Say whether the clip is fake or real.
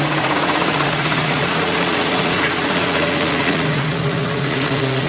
fake